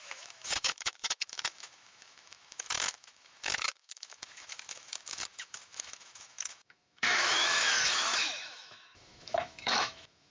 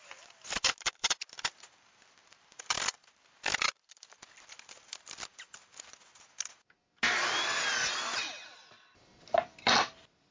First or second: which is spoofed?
first